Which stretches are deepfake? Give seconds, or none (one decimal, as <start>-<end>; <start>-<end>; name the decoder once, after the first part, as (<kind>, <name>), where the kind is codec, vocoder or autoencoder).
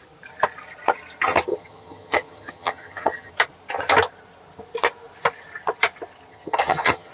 1.5-3.3 (vocoder, HiFi-GAN); 6.3-7.1